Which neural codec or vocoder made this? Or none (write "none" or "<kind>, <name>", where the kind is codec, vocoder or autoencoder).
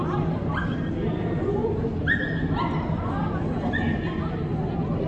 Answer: none